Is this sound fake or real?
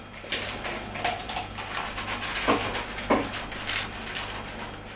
real